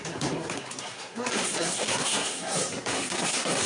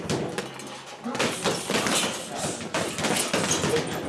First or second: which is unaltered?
second